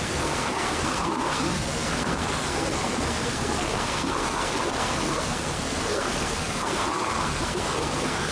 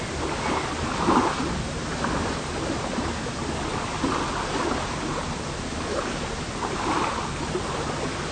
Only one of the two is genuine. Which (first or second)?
second